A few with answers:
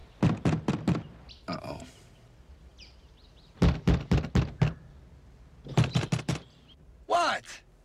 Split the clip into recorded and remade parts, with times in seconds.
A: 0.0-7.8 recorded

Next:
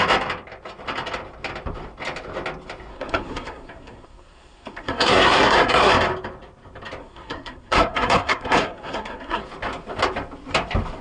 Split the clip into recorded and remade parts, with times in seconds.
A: 0.0-2.9 recorded; 2.9-5.9 remade; 5.9-7.0 recorded; 7.0-9.4 remade; 9.4-11.0 recorded

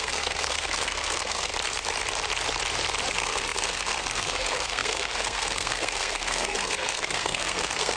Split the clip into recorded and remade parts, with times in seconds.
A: 0.0-1.5 remade; 1.5-3.1 recorded; 3.1-8.0 remade

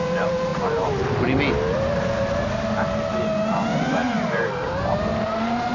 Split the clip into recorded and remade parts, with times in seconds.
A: 0.0-5.7 recorded

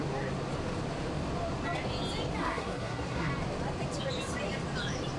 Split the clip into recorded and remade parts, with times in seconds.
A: 0.0-2.4 recorded; 2.4-3.3 remade; 3.3-5.2 recorded

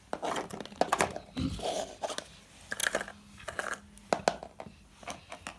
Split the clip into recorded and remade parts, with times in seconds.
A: 0.0-5.6 recorded

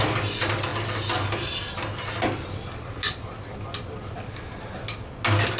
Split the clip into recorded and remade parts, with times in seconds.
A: 0.0-5.6 recorded